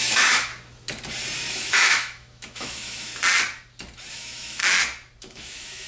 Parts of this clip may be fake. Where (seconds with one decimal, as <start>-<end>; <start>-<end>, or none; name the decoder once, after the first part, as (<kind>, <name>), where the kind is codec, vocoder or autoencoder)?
0.0-0.5 (autoencoder, DAC-VAE); 1.5-3.1; 4.1-4.6; 5.2-5.9

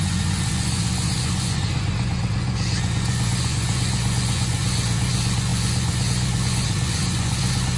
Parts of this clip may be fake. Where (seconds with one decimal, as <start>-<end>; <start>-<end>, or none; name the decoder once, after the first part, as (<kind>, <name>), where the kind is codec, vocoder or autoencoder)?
0.0-7.8 (vocoder, Vocos)

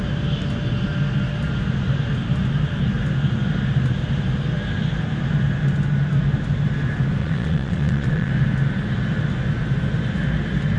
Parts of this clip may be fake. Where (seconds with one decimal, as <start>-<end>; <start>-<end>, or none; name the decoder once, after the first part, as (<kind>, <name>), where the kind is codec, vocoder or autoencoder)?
7.2-8.3 (vocoder, Vocos)

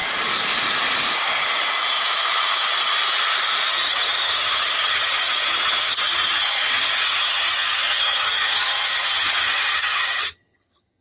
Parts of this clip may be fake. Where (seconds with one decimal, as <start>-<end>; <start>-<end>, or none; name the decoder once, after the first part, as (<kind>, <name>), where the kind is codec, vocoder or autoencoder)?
3.7-11.0 (vocoder, HiFi-GAN)

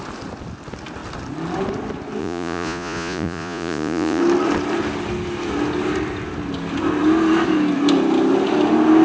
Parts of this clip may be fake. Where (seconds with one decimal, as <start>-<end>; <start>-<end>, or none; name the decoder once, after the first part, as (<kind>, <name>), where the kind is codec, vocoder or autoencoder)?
2.2-4.2 (vocoder, Vocos)

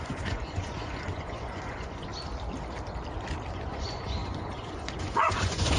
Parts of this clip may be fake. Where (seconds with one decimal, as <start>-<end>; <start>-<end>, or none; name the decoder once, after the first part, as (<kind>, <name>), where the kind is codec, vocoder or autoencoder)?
0.0-2.1 (vocoder, Vocos); 3.5-5.8

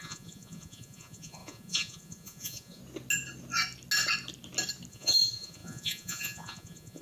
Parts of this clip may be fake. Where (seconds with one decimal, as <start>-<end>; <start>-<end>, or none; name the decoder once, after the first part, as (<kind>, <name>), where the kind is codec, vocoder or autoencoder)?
0.0-2.8 (vocoder, Vocos); 4.9-7.0

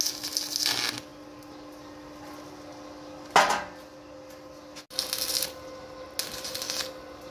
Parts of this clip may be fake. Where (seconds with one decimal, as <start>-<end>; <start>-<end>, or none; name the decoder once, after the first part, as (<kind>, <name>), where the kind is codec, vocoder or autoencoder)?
none